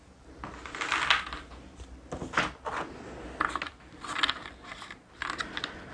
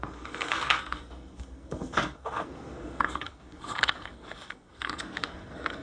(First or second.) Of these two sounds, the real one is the first